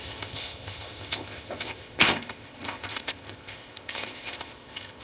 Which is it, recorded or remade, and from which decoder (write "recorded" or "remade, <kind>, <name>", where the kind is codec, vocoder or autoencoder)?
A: remade, codec, ZipCodec